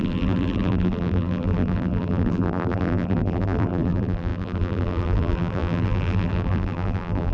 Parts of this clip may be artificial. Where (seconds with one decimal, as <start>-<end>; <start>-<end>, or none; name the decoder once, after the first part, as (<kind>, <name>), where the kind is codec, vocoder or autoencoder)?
0.0-7.3 (vocoder, BigVGAN v2)